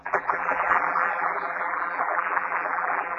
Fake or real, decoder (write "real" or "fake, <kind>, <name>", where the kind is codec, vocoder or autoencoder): fake, vocoder, BigVGAN v2